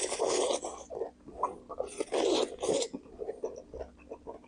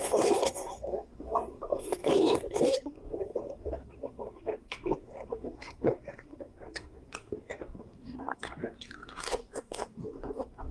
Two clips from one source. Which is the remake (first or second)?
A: second